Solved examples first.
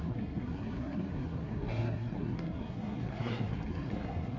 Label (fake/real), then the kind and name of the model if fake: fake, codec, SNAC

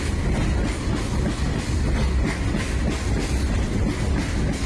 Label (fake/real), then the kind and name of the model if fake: real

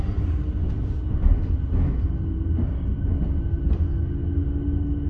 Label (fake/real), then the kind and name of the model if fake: real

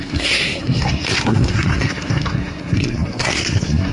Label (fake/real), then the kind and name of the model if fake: fake, codec, SNAC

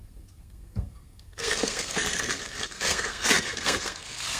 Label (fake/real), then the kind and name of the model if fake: fake, codec, SNAC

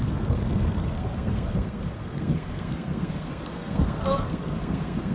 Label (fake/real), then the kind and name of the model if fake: fake, codec, SNAC